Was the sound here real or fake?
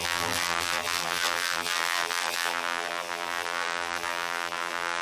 fake